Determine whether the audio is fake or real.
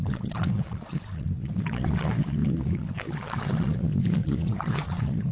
fake